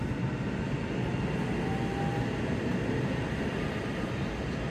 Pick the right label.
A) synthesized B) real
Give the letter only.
B